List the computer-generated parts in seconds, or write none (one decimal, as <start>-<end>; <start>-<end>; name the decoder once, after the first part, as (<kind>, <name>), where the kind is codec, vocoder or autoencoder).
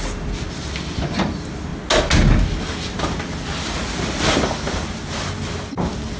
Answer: none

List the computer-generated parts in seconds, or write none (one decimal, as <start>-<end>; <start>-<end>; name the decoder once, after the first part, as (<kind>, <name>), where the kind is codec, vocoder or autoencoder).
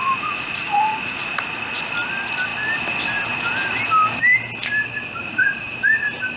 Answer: 0.0-1.8 (vocoder, Vocos); 5.2-5.7